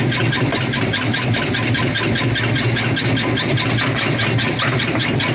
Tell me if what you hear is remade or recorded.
recorded